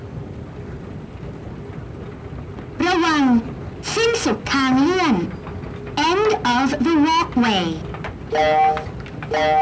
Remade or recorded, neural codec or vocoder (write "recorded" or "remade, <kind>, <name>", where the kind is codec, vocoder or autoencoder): recorded